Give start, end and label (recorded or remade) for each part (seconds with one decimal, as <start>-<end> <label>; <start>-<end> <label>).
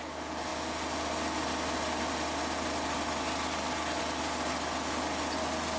0.0-5.8 recorded